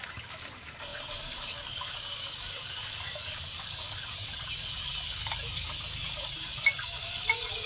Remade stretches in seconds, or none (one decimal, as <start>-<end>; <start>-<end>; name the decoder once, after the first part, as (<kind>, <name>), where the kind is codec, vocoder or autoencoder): 0.0-7.7 (codec, DAC)